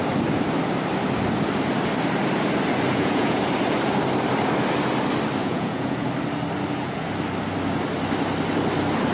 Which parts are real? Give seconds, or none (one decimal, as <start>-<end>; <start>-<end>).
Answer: 0.0-2.9; 3.4-5.4; 6.1-9.1